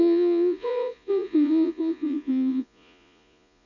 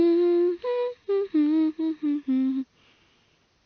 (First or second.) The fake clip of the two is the first